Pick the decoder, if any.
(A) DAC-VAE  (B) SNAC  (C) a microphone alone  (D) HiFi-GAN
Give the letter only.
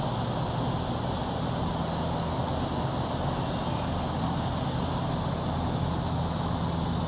C